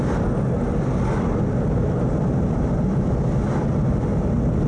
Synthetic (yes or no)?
no